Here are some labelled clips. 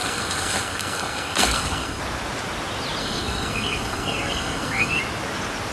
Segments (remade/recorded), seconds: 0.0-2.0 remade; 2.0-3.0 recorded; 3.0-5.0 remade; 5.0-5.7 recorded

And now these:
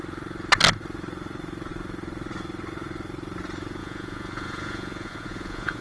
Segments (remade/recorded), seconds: 0.0-3.8 recorded; 3.8-5.8 remade

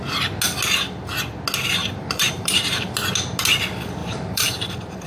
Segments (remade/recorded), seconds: 0.0-1.8 recorded; 1.8-2.9 remade; 2.9-4.0 recorded; 4.0-5.1 remade

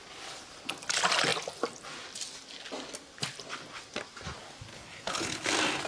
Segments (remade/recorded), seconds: 0.0-4.7 recorded; 4.7-5.5 remade; 5.5-5.9 recorded

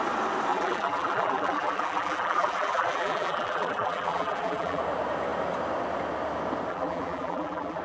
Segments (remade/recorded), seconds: 0.0-0.5 recorded; 0.5-4.8 remade; 4.8-6.7 recorded; 6.7-7.8 remade